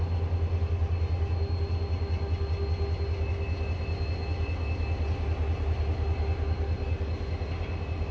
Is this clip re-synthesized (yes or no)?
no